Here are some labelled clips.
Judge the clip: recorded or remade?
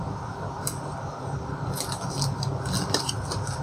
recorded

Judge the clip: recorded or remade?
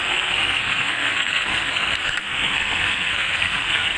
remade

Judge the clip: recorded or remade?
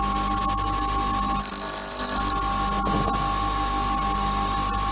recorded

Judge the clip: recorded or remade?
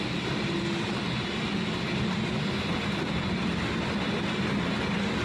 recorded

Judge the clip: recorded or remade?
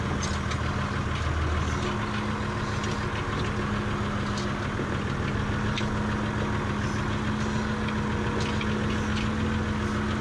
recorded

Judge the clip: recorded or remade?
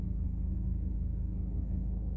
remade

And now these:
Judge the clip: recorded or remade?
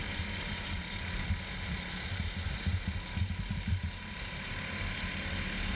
recorded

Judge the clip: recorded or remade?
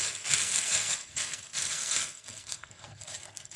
remade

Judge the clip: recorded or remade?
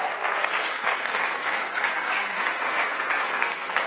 remade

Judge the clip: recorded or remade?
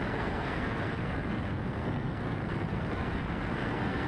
remade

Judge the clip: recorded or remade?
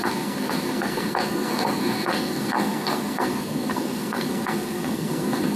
remade